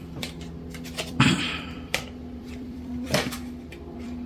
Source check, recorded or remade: remade